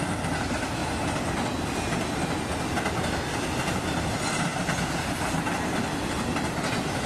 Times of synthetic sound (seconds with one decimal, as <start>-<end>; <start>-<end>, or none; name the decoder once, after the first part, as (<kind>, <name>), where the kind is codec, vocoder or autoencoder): none